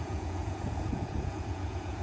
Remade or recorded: remade